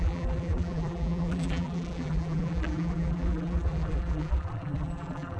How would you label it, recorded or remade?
remade